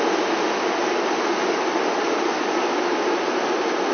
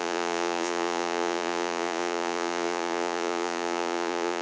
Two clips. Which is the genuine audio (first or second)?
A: first